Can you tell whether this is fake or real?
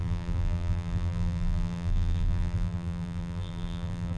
fake